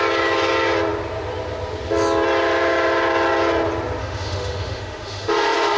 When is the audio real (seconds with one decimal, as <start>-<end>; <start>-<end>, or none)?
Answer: 0.0-4.0